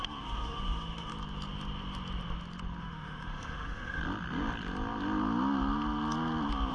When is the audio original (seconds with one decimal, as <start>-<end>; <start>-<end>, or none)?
1.1-2.8; 4.0-6.7